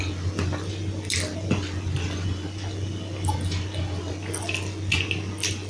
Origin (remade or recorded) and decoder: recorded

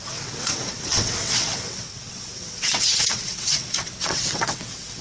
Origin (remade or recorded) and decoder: remade, vocoder, WaveNeXt